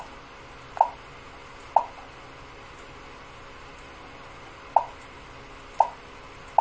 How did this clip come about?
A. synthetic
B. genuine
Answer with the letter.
B